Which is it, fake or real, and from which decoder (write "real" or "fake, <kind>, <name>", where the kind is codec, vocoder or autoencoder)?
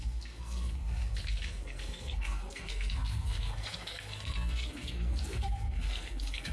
fake, codec, SNAC